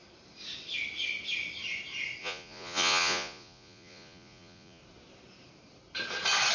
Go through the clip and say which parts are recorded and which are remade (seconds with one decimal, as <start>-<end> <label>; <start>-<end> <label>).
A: 0.0-2.2 recorded; 2.2-4.8 remade; 4.8-6.5 recorded